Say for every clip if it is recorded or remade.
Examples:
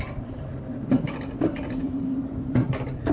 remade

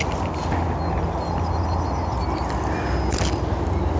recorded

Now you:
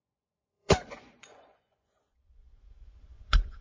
remade